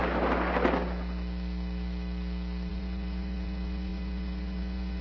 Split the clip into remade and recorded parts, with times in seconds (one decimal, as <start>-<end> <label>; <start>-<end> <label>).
0.0-2.7 recorded; 2.7-5.0 remade

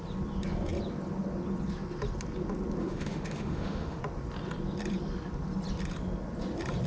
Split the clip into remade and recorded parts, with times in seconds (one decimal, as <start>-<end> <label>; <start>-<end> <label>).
0.0-2.8 recorded; 2.8-4.0 remade; 4.0-6.9 recorded

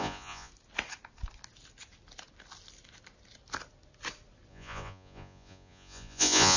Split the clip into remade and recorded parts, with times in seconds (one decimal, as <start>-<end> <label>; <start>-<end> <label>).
0.0-0.5 remade; 0.5-4.5 recorded; 4.5-6.6 remade

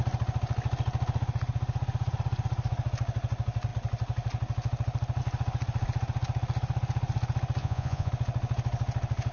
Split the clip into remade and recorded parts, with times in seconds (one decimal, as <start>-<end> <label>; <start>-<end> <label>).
0.0-7.6 recorded; 7.6-8.1 remade; 8.1-9.3 recorded

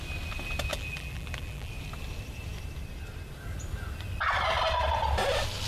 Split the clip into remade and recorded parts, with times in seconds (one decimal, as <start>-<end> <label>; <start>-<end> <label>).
0.0-0.7 recorded; 0.7-1.7 remade; 1.7-5.7 recorded